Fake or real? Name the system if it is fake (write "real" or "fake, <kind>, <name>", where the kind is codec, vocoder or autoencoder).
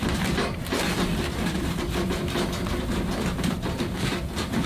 fake, vocoder, BigVGAN v2